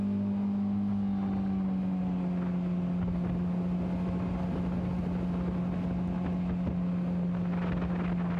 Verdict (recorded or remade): recorded